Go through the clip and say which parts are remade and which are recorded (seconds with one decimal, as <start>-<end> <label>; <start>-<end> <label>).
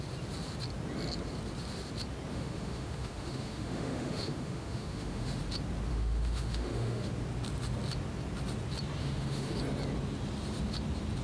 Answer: 0.0-2.3 recorded; 2.3-5.4 remade; 5.4-5.9 recorded; 5.9-7.1 remade; 7.1-9.0 recorded; 9.0-9.6 remade; 9.6-11.2 recorded